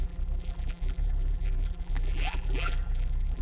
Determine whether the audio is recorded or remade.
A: remade